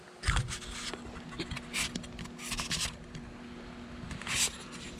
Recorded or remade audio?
recorded